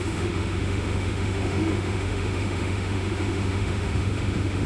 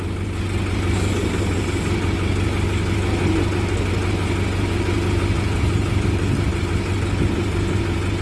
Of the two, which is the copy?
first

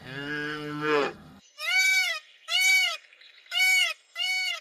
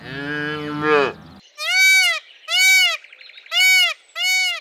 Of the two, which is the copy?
first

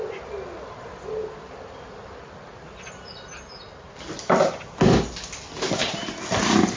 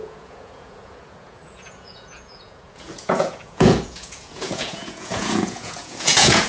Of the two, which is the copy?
second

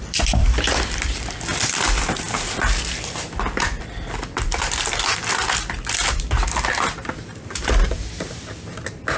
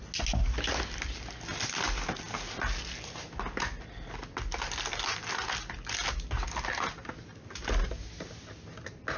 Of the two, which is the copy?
first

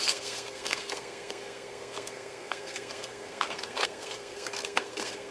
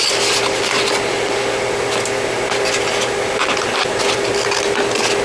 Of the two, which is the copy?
first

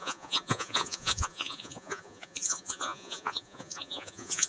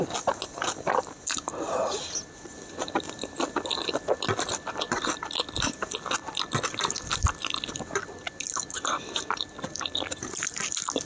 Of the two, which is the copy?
first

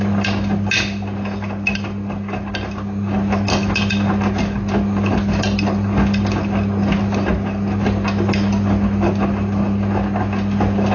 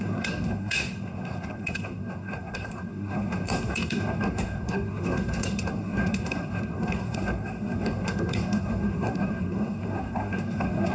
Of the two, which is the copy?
second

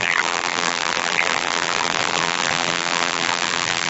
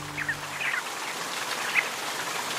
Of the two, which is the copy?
first